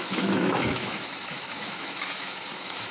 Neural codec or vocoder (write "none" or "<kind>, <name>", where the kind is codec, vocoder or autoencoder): autoencoder, DAC-VAE